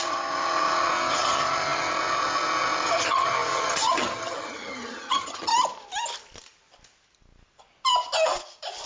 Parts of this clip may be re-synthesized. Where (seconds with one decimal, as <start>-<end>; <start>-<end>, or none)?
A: 0.0-5.5